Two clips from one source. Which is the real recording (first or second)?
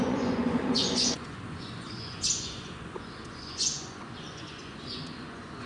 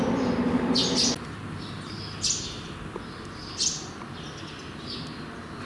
second